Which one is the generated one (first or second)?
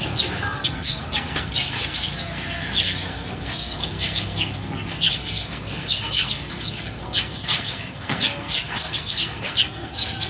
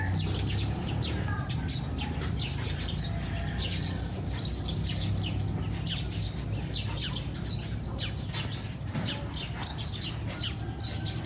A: first